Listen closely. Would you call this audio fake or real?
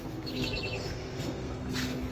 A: fake